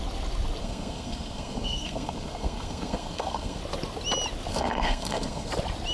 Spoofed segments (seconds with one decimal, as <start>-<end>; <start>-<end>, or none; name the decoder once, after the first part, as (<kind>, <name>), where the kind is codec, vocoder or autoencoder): 0.6-3.6 (codec, SNAC); 4.5-5.5